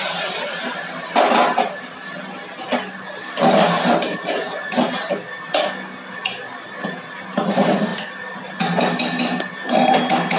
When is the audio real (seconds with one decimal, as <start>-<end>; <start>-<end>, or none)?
0.0-10.4